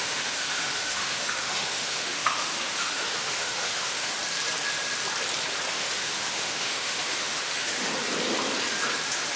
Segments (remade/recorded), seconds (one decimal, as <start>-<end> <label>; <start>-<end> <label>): 0.0-4.2 remade; 4.2-5.7 recorded; 5.7-7.9 remade; 7.9-9.4 recorded